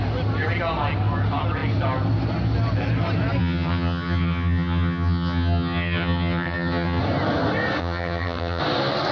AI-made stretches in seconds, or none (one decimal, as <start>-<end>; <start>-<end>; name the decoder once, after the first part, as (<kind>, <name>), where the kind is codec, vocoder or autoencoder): 3.4-7.0 (vocoder, HiFi-GAN); 7.8-8.6